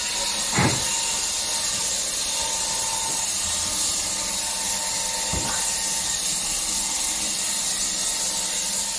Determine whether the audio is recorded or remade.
remade